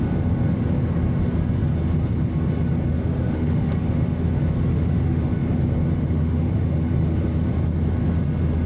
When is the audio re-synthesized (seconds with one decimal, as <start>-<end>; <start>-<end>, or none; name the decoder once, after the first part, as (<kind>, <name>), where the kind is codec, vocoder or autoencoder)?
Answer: 2.9-4.2 (autoencoder, DAC-VAE); 4.7-5.3; 6.0-6.9